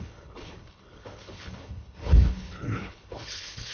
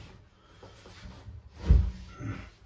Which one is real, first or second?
second